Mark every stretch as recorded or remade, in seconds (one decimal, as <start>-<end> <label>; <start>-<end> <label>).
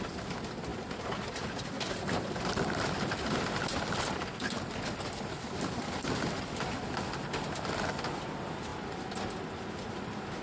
0.0-10.4 recorded